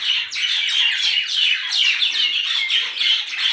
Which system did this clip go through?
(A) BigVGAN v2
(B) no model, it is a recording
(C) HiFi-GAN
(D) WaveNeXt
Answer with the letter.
B